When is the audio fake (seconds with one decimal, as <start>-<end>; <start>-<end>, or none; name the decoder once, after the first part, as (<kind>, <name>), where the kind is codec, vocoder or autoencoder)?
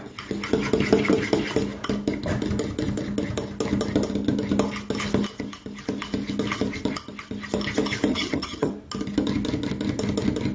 8.1-8.7 (vocoder, HiFi-GAN)